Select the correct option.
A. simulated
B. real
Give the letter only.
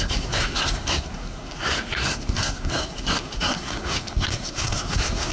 A